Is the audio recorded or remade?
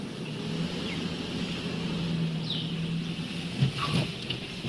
recorded